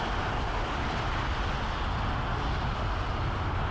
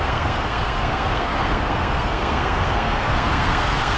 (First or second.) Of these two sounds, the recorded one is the first